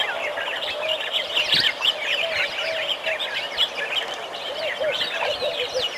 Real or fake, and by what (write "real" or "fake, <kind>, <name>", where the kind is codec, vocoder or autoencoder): real